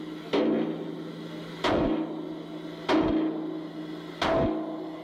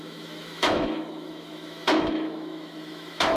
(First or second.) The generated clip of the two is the second